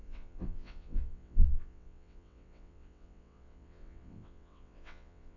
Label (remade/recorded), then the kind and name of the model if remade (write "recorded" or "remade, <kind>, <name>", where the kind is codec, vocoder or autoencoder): remade, vocoder, WaveNeXt